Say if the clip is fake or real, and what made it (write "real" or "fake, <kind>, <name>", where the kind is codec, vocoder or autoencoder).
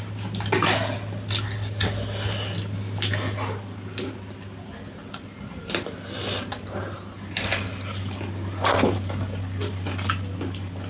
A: real